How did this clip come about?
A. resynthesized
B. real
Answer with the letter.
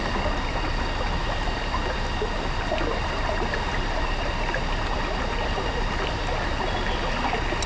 B